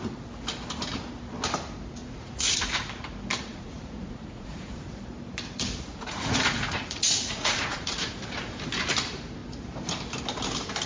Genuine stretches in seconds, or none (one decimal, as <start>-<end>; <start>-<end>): 0.0-2.0; 2.9-3.5; 4.9-5.9; 8.2-10.9